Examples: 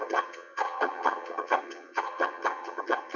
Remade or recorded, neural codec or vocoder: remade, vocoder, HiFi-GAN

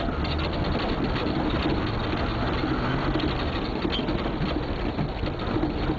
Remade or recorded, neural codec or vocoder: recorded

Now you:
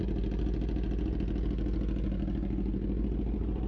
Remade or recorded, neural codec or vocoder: recorded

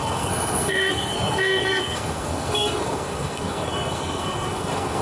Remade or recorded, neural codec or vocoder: remade, codec, SNAC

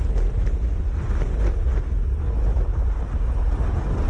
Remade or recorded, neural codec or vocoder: recorded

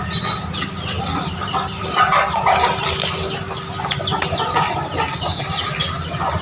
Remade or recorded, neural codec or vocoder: recorded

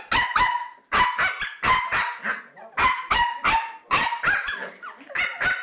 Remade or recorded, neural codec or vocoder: recorded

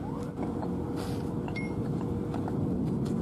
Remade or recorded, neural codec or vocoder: recorded